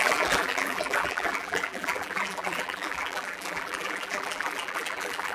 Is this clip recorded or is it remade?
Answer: remade